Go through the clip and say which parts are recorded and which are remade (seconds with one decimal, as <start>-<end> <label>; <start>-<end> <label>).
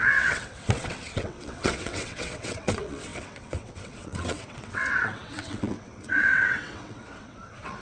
0.0-7.8 remade